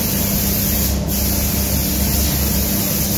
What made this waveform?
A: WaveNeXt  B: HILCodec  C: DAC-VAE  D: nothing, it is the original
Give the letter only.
D